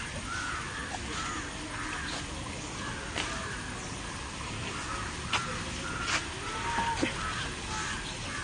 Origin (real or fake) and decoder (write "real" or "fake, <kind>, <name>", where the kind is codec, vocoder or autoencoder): real